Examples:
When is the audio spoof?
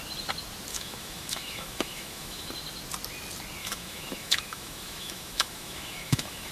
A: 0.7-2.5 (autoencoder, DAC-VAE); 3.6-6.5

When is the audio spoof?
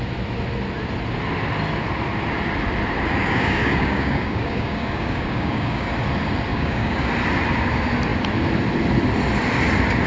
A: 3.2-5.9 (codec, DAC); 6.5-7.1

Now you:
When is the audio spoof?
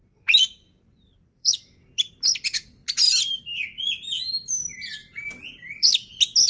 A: 0.0-1.5 (vocoder, BigVGAN v2); 5.0-6.1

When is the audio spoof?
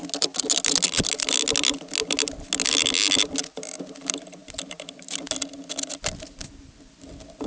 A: none